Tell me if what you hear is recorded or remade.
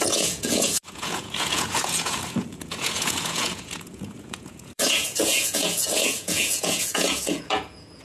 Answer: remade